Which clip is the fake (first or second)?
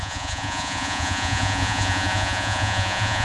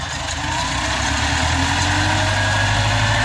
first